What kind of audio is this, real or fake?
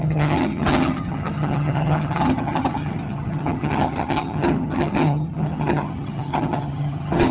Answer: fake